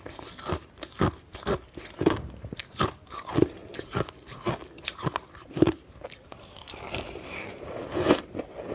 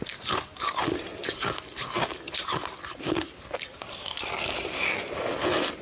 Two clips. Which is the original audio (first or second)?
second